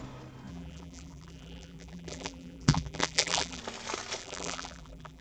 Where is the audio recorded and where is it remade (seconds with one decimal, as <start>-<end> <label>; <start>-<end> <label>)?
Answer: 0.0-0.5 recorded; 0.5-3.6 remade; 3.6-4.2 recorded; 4.2-5.2 remade